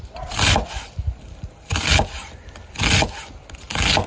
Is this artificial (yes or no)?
no